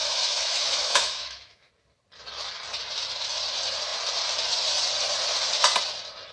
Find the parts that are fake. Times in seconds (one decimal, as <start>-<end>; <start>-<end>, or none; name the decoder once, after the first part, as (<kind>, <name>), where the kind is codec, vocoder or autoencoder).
0.0-1.7 (autoencoder, DAC-VAE)